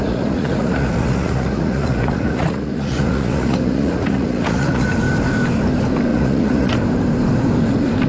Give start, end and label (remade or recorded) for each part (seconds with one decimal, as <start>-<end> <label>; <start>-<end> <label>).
0.0-4.9 remade; 4.9-6.1 recorded; 6.1-6.7 remade; 6.7-8.1 recorded